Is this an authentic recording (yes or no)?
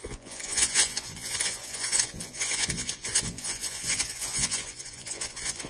no